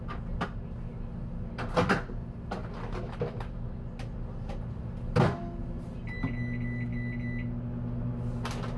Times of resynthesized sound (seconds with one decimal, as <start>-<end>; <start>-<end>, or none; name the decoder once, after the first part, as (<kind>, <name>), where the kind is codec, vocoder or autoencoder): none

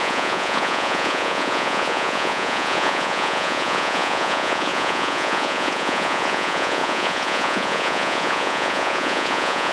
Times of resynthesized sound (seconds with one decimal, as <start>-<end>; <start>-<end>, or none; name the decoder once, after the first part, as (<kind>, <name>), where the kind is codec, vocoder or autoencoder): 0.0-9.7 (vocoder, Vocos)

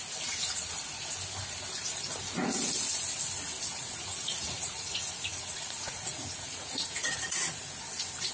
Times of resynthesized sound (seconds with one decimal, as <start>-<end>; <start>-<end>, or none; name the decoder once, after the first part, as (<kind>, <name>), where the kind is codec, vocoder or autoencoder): 3.7-7.5 (vocoder, Vocos)

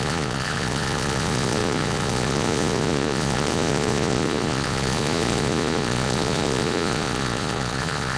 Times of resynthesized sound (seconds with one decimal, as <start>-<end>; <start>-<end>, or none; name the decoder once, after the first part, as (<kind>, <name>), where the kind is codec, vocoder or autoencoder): 0.0-8.2 (vocoder, Vocos)